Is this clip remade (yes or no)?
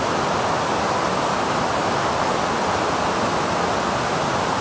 no